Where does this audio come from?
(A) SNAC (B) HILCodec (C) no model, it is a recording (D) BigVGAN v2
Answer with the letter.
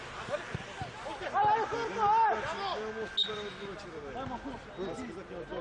C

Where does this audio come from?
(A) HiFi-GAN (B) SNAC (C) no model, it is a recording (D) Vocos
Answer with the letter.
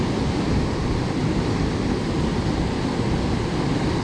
C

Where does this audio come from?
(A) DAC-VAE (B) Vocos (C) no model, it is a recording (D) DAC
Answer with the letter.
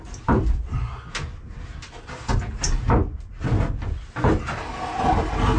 C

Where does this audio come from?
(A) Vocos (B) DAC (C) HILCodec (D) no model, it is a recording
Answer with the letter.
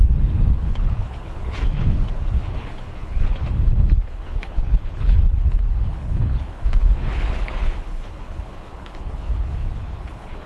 C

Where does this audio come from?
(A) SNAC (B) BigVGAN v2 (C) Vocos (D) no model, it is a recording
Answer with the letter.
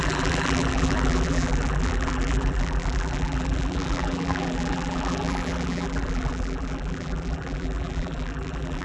B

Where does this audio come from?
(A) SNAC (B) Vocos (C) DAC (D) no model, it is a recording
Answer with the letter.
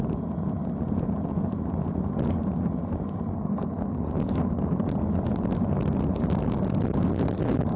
D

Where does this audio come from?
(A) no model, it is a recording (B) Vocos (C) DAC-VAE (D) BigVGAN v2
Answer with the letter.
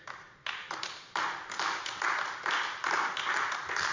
D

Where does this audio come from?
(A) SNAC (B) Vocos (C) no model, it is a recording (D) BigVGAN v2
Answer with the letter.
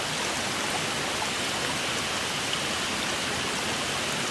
C